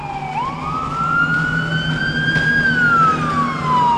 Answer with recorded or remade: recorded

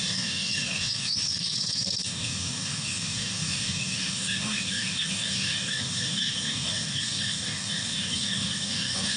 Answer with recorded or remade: remade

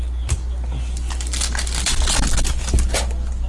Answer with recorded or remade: recorded